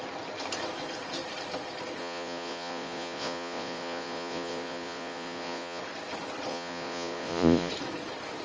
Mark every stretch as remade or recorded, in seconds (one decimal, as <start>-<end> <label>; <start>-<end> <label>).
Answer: 0.0-2.0 recorded; 2.0-5.8 remade; 5.8-6.5 recorded; 6.5-7.7 remade; 7.7-8.4 recorded